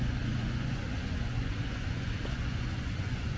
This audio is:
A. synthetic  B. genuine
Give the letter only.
A